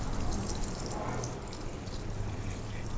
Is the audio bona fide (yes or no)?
yes